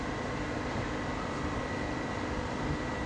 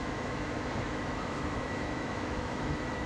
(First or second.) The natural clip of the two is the first